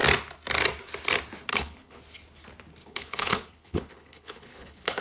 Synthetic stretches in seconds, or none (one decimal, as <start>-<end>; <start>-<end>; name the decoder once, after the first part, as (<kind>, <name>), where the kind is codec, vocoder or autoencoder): 1.5-2.0 (codec, HILCodec); 2.8-5.0